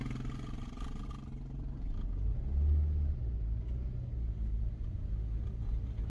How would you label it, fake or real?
real